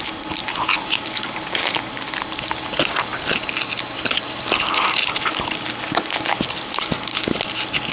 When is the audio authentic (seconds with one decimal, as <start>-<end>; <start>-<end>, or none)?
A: 0.0-7.9